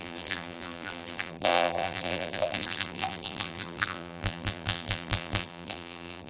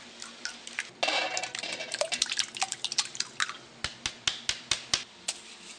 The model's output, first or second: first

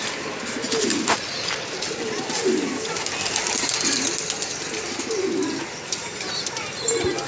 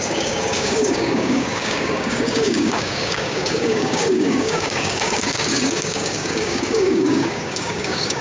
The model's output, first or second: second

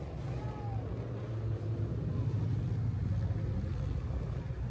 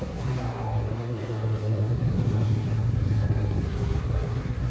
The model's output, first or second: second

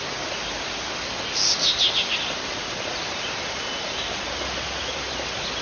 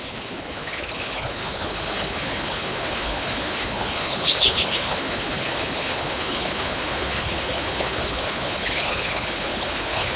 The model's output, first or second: second